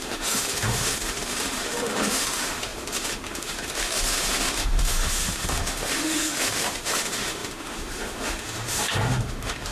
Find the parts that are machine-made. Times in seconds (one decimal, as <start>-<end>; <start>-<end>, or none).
0.0-9.7